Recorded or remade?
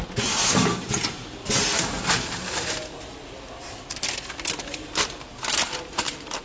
recorded